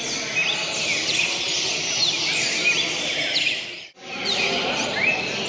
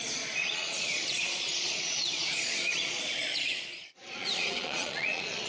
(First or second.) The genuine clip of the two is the first